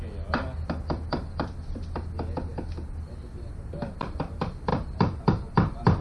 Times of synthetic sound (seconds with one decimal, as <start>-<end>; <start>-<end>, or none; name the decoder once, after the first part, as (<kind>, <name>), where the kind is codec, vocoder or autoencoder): none